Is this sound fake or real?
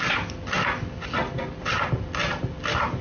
real